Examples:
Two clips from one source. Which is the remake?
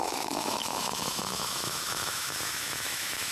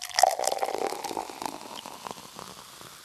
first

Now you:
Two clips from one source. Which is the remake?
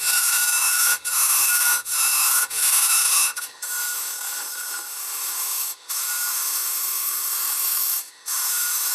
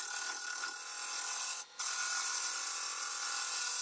first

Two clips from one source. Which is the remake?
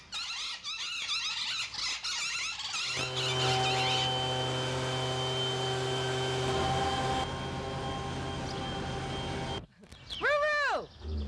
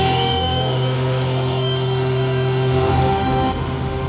second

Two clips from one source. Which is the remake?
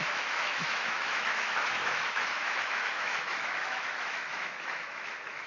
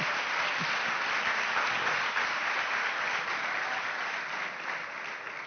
first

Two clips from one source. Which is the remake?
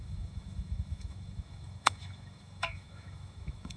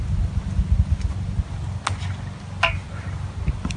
first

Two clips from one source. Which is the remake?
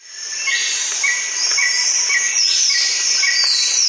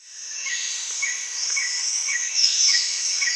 second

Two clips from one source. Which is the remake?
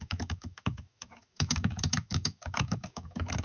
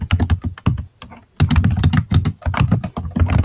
first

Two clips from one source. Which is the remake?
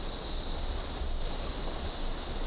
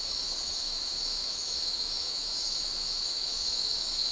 second